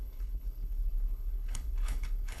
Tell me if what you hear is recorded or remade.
remade